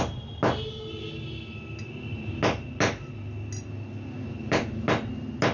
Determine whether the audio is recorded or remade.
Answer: recorded